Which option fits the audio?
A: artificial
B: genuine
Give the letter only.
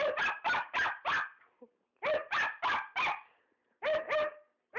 B